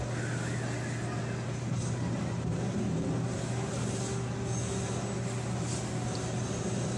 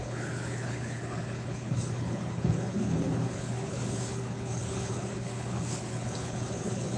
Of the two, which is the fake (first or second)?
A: second